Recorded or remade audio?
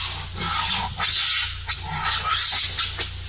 recorded